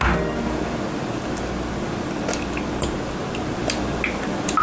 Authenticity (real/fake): real